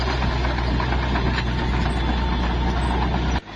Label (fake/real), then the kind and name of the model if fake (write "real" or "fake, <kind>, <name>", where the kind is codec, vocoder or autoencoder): real